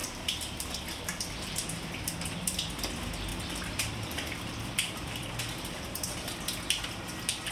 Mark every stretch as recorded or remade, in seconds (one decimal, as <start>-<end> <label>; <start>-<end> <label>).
0.0-1.5 remade; 1.5-3.3 recorded; 3.3-5.4 remade; 5.4-7.5 recorded